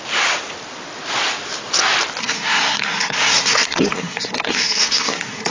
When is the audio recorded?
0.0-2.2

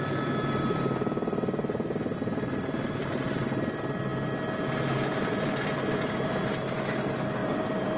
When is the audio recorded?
0.0-0.4; 3.1-7.4

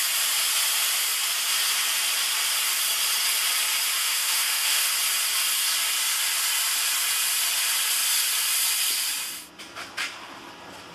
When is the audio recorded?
0.0-4.0; 4.9-10.9

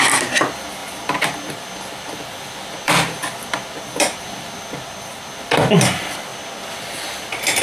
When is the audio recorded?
6.3-7.6